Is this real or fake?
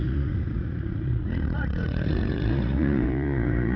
fake